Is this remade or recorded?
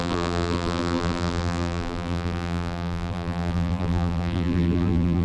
remade